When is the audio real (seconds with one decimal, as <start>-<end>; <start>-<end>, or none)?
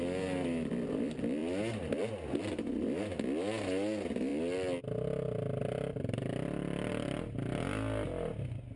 0.0-4.3; 4.8-5.6; 6.9-8.8